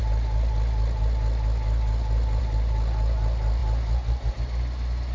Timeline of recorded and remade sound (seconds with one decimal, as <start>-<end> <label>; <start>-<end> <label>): 0.0-5.1 recorded